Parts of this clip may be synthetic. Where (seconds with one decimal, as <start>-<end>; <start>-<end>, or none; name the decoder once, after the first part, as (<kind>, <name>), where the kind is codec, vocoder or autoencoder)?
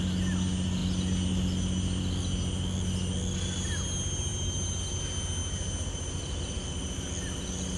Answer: none